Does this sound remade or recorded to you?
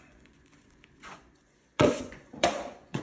remade